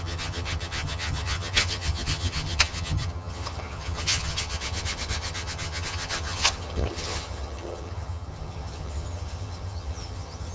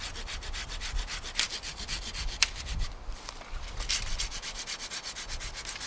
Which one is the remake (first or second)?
first